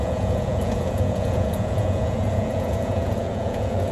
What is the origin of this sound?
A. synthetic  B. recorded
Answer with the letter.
A